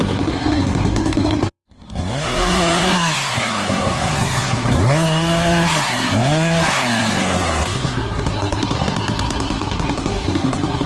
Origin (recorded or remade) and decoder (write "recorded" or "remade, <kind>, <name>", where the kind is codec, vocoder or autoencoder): remade, codec, SNAC